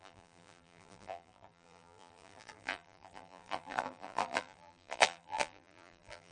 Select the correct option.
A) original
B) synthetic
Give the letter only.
B